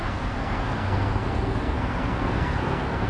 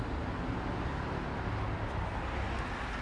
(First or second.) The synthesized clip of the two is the first